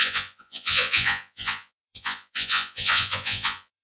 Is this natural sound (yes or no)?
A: no